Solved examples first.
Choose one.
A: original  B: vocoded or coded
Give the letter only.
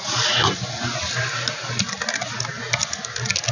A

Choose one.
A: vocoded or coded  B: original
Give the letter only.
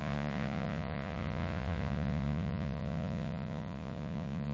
A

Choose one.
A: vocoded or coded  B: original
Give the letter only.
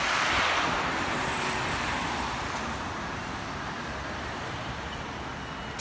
B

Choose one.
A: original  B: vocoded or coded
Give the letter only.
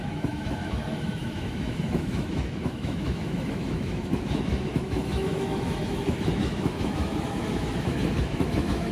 B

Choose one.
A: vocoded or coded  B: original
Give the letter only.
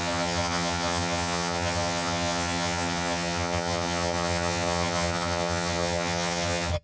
A